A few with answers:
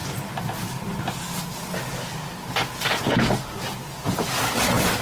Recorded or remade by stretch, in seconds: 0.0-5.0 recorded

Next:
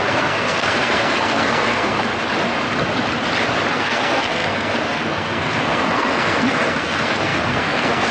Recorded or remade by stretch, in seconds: 0.0-2.1 remade; 2.1-3.7 recorded; 3.7-8.1 remade

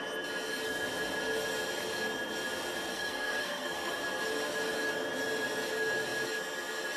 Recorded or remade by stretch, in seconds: 0.0-2.9 recorded; 2.9-3.9 remade; 3.9-7.0 recorded

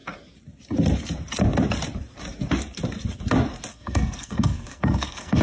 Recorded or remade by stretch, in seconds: 0.0-3.7 recorded; 3.7-5.4 remade

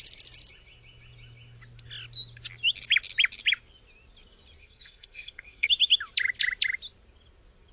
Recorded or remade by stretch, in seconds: 0.0-4.6 recorded; 4.6-5.7 remade; 5.7-7.7 recorded